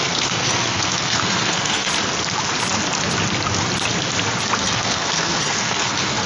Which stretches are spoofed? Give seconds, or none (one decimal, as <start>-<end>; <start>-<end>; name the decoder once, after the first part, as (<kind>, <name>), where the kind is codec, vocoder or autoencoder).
0.0-1.9 (codec, SNAC); 4.6-6.3